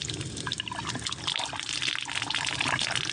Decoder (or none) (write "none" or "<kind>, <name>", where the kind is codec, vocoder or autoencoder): none